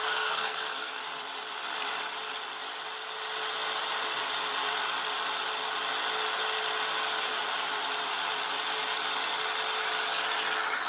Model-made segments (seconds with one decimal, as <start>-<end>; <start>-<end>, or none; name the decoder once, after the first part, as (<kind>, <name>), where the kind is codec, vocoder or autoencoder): 0.0-1.0 (codec, SNAC)